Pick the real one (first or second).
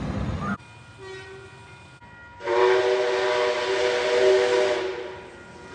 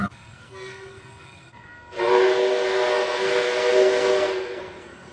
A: first